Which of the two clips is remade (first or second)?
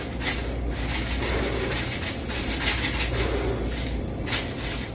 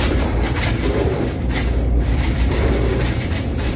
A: second